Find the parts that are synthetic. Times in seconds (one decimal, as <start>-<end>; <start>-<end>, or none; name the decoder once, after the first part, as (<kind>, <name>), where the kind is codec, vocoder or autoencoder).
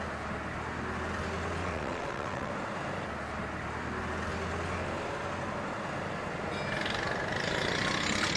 1.6-2.5 (vocoder, WaveNeXt)